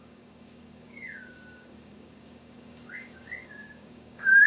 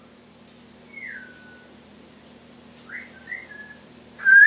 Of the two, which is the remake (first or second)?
first